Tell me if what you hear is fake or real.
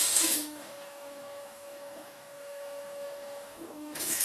fake